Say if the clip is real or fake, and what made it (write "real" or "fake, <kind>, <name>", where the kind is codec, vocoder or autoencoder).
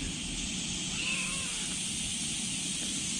real